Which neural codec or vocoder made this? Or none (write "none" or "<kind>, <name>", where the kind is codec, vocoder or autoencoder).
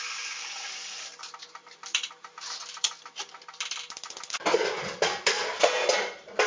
vocoder, BigVGAN v2